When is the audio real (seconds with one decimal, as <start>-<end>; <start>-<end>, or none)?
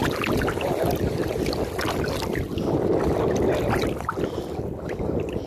0.0-5.5